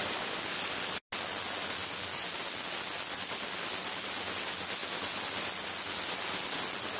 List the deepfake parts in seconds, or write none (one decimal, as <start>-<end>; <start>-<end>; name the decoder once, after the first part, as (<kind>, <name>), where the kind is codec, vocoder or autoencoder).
4.8-5.4 (vocoder, BigVGAN v2)